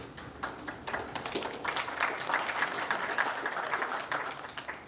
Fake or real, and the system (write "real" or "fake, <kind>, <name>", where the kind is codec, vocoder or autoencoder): real